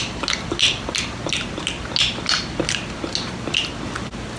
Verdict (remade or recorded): recorded